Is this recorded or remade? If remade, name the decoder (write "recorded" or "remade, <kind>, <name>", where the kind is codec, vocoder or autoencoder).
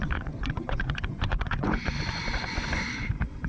remade, vocoder, Vocos